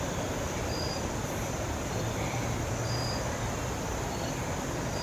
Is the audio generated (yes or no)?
no